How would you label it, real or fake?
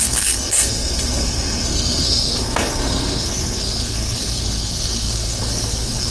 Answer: fake